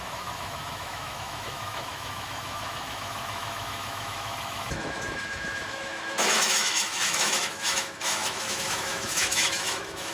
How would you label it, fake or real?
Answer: fake